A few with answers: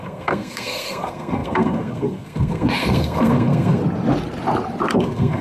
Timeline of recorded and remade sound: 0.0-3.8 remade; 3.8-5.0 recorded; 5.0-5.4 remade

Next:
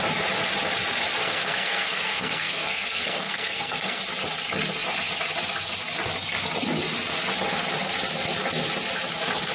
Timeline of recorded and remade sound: 0.0-1.2 recorded; 1.2-4.0 remade; 4.0-9.5 recorded